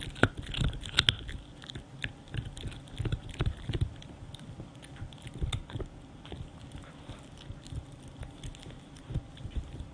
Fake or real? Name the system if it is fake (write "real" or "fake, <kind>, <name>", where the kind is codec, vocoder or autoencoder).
real